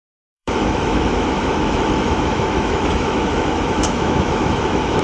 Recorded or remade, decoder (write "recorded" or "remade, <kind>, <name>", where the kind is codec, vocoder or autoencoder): remade, autoencoder, DAC-VAE